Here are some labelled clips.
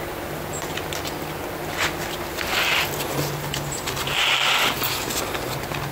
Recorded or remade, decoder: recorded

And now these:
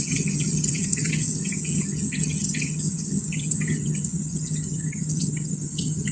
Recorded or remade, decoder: remade, vocoder, HiFi-GAN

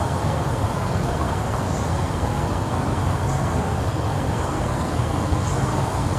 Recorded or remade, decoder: remade, codec, SNAC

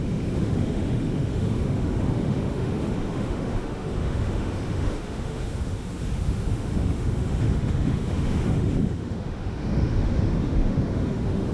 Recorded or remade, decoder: remade, autoencoder, DAC-VAE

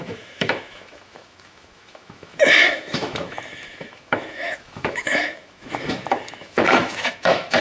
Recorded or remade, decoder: remade, autoencoder, DAC-VAE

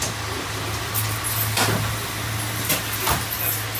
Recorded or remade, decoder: recorded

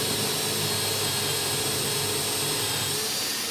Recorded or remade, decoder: recorded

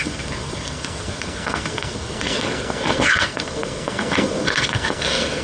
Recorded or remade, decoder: remade, codec, SNAC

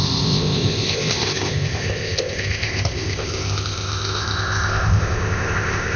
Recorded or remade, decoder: remade, codec, ZipCodec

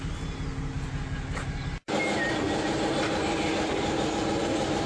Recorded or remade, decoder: recorded